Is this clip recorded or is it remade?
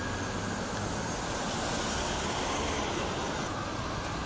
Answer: recorded